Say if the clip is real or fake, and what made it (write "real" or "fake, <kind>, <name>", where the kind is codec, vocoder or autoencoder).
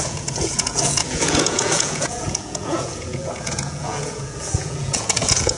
fake, vocoder, Vocos